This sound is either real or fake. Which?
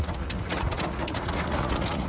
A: fake